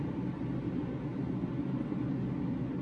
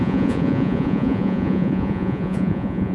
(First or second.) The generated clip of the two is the second